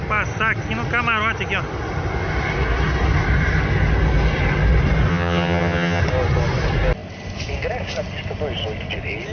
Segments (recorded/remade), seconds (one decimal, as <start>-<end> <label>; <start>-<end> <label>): 0.0-5.1 recorded; 5.1-6.0 remade; 6.0-9.3 recorded